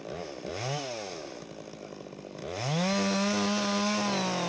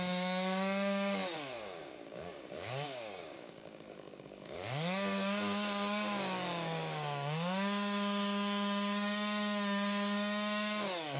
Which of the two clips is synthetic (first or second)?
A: second